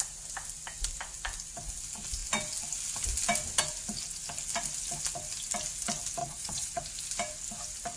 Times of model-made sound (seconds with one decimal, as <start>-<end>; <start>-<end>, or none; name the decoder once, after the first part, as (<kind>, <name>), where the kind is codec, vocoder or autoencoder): 6.2-6.8 (vocoder, Vocos)